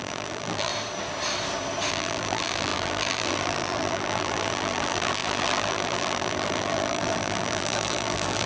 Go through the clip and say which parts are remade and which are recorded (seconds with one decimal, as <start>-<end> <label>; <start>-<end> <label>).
0.0-0.7 remade; 0.7-1.9 recorded; 1.9-8.5 remade